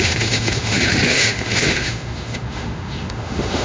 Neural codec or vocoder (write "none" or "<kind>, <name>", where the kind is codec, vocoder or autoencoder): autoencoder, DAC-VAE